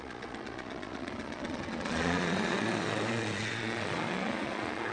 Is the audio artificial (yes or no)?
yes